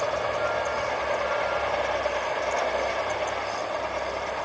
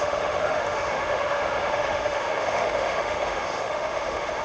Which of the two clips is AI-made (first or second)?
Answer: second